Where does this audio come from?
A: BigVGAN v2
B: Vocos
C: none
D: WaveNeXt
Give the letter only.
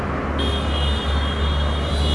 C